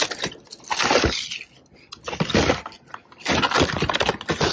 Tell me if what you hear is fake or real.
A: real